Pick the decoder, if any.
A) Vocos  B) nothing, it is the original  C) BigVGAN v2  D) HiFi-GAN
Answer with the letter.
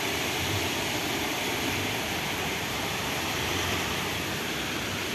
C